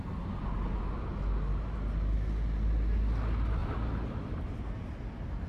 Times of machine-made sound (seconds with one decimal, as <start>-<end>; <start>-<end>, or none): 3.6-4.5